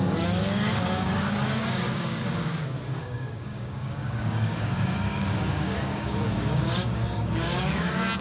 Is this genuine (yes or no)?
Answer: no